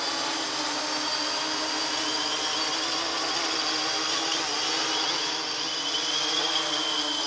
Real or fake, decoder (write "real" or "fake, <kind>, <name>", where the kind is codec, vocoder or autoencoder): real